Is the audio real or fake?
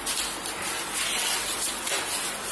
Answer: real